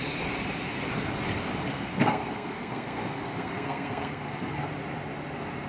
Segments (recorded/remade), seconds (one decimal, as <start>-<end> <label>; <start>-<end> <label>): 0.0-1.7 recorded; 1.7-4.7 remade; 4.7-5.7 recorded